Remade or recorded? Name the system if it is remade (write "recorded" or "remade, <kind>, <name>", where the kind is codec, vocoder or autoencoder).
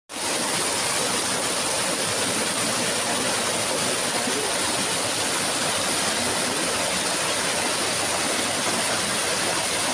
recorded